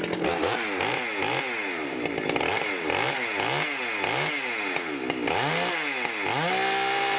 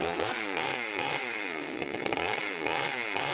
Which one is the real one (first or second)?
first